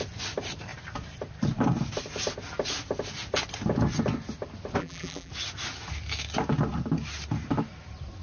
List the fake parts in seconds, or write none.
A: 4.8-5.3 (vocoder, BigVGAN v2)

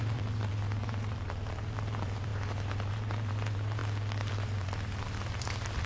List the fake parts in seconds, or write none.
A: 0.0-2.3 (vocoder, BigVGAN v2); 2.9-3.8; 4.3-5.9

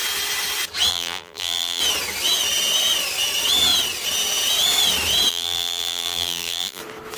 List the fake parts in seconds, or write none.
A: 0.9-1.8 (vocoder, BigVGAN v2); 5.3-6.8

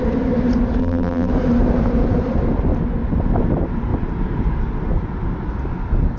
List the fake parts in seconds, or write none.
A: 0.8-1.3 (vocoder, BigVGAN v2)

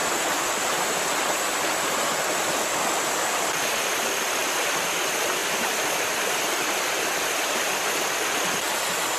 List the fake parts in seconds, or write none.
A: 0.0-1.1 (vocoder, BigVGAN v2); 4.4-5.0; 5.4-7.1